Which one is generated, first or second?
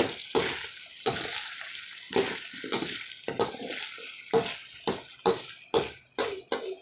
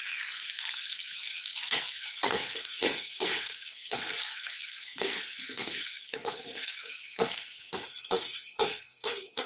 second